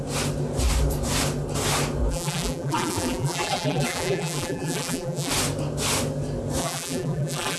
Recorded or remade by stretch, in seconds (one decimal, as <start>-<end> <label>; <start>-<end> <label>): 0.0-2.1 recorded; 2.1-5.3 remade; 5.3-6.6 recorded; 6.6-7.6 remade